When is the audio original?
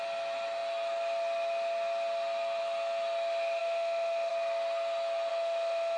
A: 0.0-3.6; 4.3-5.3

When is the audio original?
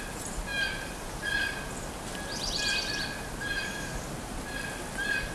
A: 0.0-5.3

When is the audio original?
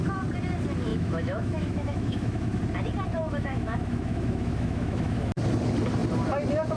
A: 0.0-0.9; 2.6-3.2; 5.3-6.8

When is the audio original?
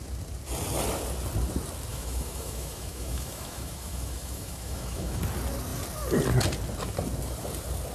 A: 0.0-1.9; 5.2-7.9